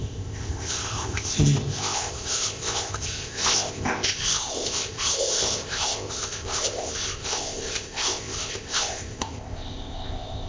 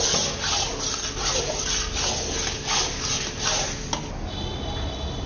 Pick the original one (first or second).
second